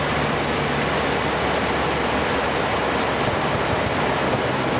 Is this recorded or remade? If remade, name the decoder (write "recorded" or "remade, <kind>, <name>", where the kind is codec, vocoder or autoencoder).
recorded